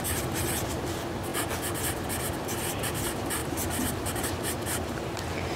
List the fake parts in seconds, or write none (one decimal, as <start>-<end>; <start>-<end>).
3.4-4.2